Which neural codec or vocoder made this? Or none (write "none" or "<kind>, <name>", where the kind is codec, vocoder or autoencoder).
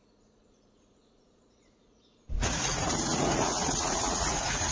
vocoder, Vocos